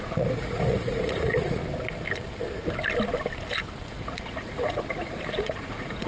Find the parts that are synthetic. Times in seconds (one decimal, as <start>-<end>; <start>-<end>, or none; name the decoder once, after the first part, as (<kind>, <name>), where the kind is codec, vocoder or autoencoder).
0.0-1.6 (vocoder, Vocos); 3.9-6.1